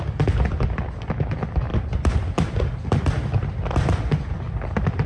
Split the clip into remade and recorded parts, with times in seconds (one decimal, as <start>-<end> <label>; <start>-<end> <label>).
0.0-1.7 recorded; 1.7-2.7 remade; 2.7-5.1 recorded